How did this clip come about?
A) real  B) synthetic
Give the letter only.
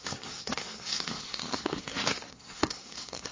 B